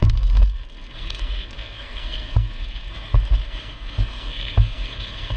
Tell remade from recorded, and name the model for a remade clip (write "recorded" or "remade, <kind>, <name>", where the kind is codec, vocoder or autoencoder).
remade, codec, SNAC